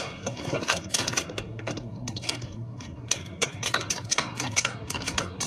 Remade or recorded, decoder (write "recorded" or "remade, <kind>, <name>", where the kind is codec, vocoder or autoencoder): remade, codec, SNAC